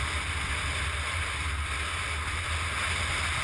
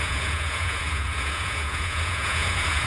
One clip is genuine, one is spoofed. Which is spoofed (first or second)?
second